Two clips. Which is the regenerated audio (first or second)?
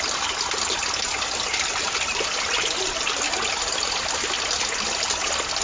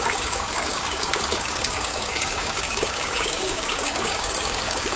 second